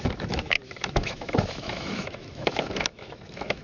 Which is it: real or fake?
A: fake